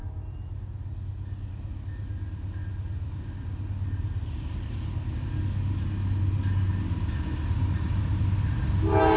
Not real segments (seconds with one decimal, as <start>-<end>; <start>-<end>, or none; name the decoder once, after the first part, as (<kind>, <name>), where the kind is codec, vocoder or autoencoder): none